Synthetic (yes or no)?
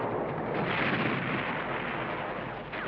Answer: no